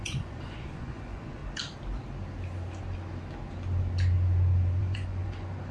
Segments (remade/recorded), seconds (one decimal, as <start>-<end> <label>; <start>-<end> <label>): 0.0-1.4 remade; 1.4-4.8 recorded; 4.8-5.7 remade